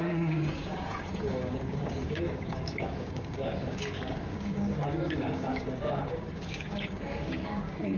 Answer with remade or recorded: remade